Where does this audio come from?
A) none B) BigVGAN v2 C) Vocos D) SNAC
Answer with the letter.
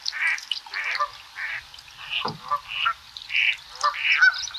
A